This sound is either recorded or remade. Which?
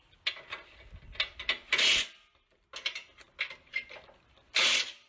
recorded